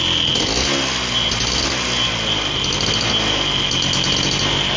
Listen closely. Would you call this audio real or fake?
real